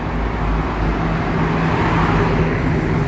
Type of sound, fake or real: real